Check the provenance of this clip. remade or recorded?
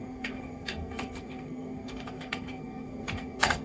remade